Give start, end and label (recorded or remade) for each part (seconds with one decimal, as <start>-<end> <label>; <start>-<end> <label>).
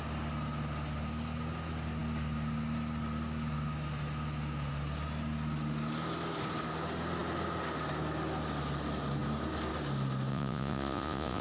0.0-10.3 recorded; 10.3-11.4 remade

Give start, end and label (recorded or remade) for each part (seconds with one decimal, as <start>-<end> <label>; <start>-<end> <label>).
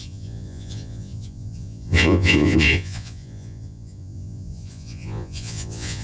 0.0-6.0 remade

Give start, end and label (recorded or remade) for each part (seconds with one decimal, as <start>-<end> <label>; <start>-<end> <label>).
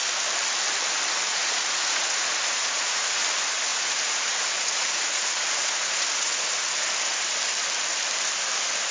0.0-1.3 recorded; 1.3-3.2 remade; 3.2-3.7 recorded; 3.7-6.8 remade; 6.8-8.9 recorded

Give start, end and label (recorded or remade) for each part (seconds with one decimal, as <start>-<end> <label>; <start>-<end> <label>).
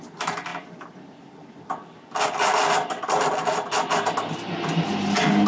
0.0-5.5 recorded